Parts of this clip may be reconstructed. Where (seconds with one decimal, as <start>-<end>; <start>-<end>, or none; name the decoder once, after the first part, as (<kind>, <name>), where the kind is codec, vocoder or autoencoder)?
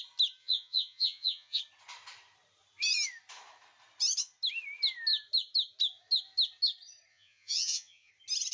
0.4-1.6 (vocoder, Vocos); 7.1-8.1